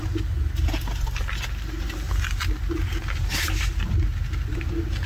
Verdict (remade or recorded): recorded